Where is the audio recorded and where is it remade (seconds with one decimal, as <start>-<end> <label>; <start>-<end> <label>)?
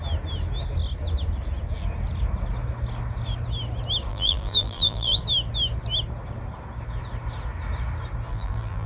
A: 0.0-4.1 recorded; 4.1-5.2 remade; 5.2-8.3 recorded; 8.3-8.9 remade